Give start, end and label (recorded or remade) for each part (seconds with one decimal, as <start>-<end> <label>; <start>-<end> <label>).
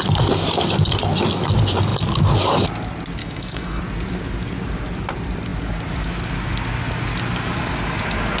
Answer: 0.0-3.2 recorded; 3.2-3.8 remade; 3.8-8.4 recorded